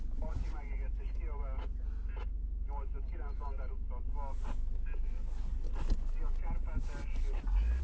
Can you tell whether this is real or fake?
real